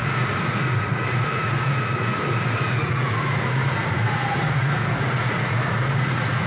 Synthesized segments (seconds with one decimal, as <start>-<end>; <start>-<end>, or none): 0.0-6.5